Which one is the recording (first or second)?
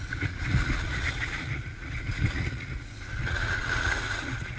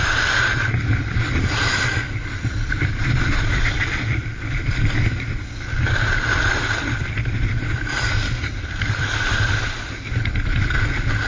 second